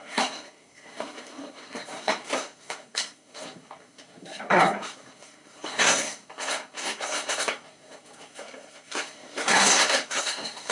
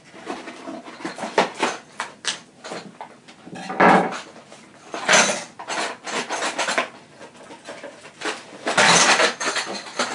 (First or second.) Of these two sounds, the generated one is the first